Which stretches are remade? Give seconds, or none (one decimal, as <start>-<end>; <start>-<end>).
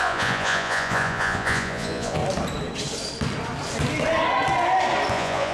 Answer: 0.0-2.2; 5.1-5.5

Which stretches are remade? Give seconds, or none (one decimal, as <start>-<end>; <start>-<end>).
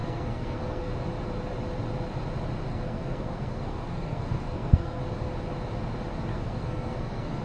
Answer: 0.0-0.9; 2.7-5.0; 6.3-7.4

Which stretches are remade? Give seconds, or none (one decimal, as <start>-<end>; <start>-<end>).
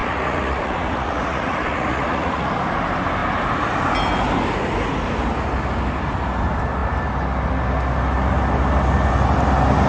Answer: 0.0-2.5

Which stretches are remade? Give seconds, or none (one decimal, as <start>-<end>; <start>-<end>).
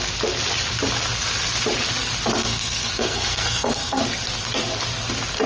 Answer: 2.4-4.0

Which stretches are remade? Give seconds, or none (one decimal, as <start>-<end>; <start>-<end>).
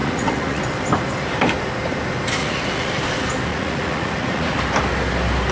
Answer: 0.0-0.6; 2.4-2.9; 3.5-4.6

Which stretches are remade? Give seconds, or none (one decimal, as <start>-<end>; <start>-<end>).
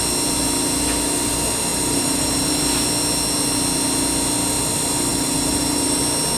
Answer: 1.7-2.6; 5.1-6.0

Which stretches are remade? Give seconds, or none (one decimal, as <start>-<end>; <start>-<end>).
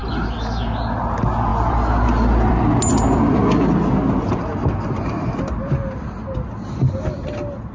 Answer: 0.0-1.0; 1.5-2.6; 4.5-6.8